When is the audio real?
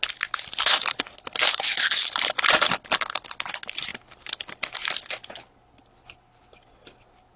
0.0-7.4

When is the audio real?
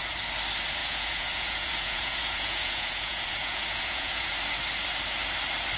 0.0-0.8; 4.3-5.8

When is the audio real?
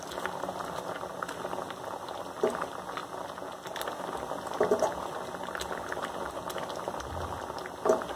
0.0-8.2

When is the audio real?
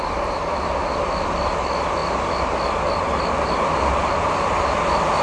0.0-5.2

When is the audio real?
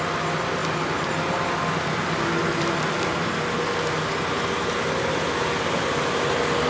0.0-6.7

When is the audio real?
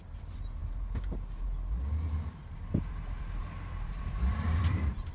0.0-3.4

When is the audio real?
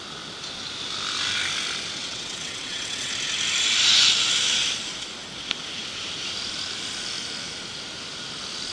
0.0-2.0; 3.1-8.7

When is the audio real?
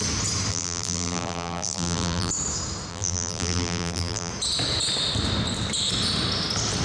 0.0-0.5; 2.3-2.9; 4.3-6.8